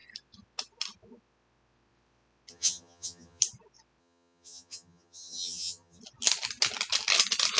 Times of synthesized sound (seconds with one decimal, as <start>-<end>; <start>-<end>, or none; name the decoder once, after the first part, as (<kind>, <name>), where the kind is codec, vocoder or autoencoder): 2.5-3.4 (vocoder, HiFi-GAN); 4.0-6.0

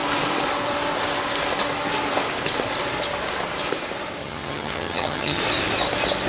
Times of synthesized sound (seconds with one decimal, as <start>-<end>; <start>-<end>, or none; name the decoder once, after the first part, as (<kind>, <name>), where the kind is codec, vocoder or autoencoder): 4.2-5.4 (vocoder, HiFi-GAN)

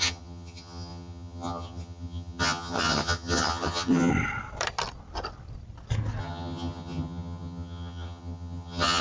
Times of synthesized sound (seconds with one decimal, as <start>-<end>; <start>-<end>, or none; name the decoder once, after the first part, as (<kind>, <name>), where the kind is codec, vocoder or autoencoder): 0.0-4.1 (vocoder, HiFi-GAN); 6.2-9.0

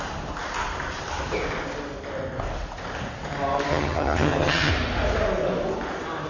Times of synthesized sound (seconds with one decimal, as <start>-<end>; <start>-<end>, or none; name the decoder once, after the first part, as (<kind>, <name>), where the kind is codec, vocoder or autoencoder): 3.7-4.7 (vocoder, HiFi-GAN)